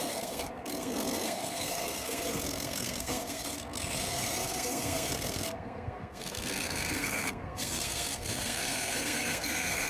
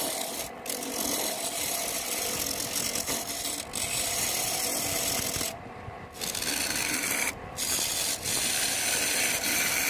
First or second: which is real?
second